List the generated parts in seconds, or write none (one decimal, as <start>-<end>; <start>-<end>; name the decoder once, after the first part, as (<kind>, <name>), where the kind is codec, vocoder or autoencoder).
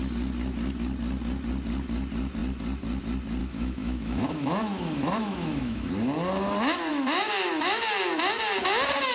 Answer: 3.4-5.9 (autoencoder, DAC-VAE); 6.9-7.8